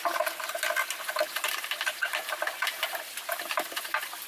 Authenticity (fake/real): real